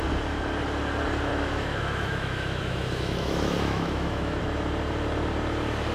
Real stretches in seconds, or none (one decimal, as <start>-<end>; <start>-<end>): 0.0-1.3; 4.4-5.9